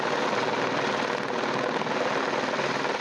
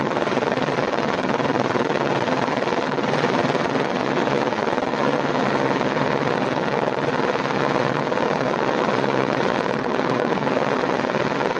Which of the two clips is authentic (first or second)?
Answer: first